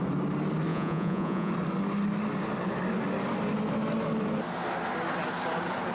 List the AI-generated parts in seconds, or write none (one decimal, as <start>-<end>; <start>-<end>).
0.7-1.5